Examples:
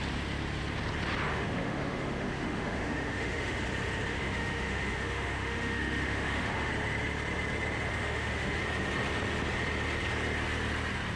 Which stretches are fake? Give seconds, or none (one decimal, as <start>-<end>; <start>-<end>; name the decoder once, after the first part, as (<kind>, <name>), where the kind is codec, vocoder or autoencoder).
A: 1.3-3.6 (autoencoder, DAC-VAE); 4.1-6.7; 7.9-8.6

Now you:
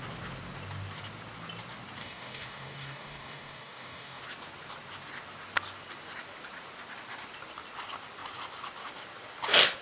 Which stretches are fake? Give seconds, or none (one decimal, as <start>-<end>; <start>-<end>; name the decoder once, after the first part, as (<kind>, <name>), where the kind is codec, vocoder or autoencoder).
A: 2.0-4.2 (codec, DAC)

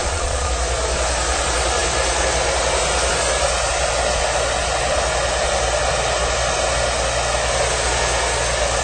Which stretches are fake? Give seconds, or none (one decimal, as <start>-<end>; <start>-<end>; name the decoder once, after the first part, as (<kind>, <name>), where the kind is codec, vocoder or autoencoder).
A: 0.0-0.5 (vocoder, Vocos)

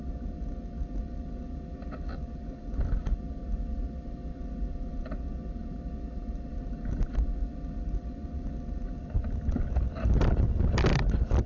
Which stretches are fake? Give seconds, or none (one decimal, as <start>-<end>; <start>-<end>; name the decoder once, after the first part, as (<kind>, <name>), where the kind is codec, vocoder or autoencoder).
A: none

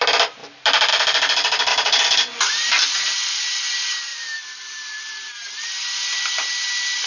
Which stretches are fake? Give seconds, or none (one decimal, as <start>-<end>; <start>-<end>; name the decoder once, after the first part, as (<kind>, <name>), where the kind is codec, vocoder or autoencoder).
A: 1.7-2.5 (vocoder, BigVGAN v2); 4.1-5.1

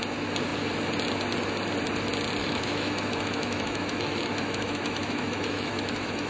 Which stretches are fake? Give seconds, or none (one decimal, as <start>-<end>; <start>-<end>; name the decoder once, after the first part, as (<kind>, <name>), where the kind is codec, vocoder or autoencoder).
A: 2.4-6.3 (autoencoder, DAC-VAE)

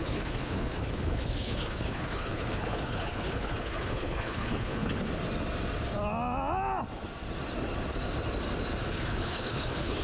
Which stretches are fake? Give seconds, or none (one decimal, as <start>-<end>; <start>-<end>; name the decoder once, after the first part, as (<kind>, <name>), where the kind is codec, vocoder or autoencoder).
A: 0.0-4.9 (codec, HILCodec); 8.9-10.0

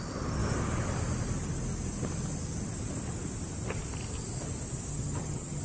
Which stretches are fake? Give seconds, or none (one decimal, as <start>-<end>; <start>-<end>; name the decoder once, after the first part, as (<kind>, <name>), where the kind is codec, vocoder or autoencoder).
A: 4.9-5.6 (vocoder, HiFi-GAN)